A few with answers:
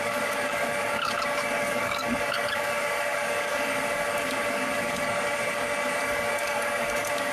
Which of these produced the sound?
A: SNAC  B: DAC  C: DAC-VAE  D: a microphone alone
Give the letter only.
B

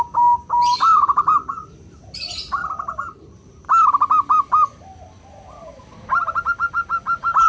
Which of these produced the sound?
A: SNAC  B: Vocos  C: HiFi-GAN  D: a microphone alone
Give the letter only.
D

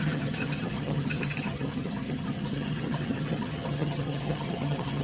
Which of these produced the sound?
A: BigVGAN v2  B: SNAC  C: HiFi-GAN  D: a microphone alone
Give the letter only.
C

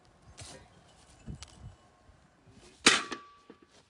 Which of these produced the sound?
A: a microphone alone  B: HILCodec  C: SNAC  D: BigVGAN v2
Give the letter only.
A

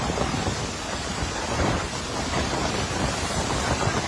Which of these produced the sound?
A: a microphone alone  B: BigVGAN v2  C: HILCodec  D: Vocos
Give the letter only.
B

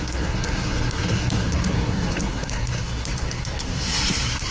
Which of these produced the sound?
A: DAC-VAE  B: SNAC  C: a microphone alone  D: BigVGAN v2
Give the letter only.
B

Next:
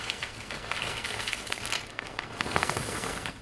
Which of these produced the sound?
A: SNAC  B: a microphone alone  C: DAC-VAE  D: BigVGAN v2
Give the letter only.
A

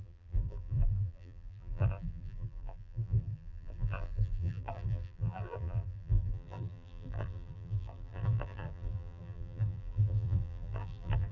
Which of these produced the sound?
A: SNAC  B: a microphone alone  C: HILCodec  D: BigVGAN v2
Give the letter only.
D